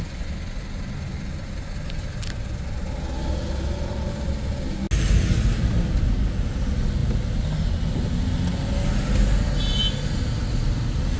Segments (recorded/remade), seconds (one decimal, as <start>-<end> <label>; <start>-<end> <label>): 0.0-11.2 recorded